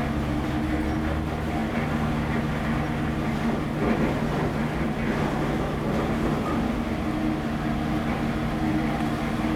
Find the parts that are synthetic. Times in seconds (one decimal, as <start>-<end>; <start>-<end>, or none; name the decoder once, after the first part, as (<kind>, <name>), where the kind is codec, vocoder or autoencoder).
none